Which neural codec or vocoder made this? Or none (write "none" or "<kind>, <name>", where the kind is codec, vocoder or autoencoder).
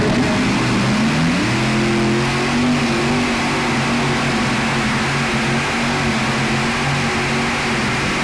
none